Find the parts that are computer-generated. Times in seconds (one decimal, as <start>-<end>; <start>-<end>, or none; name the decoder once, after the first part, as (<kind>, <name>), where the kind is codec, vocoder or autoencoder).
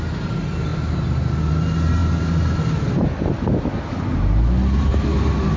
none